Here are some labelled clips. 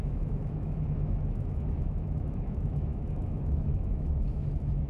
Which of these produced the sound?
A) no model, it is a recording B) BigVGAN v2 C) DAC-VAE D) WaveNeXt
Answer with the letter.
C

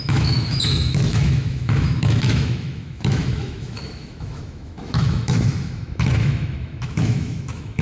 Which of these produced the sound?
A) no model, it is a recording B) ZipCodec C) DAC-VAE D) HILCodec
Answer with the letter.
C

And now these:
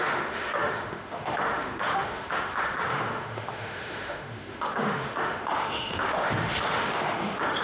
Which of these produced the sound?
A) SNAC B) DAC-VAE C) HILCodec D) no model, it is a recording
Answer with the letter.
B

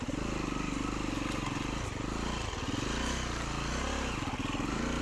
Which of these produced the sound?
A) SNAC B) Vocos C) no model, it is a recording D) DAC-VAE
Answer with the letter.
C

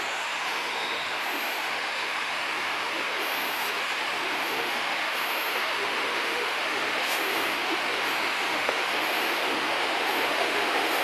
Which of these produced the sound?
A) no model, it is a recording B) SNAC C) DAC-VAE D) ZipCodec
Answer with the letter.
C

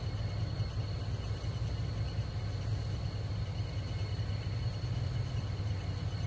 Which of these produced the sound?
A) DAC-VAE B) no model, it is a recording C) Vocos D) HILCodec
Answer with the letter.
B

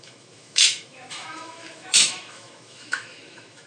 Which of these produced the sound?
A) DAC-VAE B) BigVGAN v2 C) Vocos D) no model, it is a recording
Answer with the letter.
A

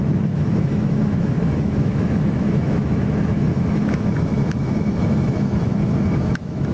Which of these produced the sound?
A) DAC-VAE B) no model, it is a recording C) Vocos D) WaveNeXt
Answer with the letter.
A